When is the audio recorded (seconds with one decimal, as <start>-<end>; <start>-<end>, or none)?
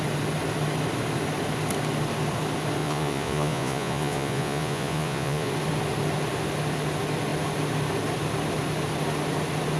0.0-2.8; 5.5-9.8